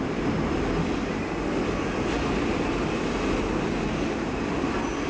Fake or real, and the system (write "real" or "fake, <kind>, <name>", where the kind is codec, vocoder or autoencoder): real